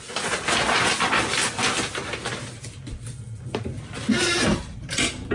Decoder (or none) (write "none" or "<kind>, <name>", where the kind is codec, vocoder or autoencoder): none